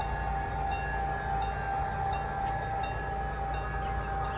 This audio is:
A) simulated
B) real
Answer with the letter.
B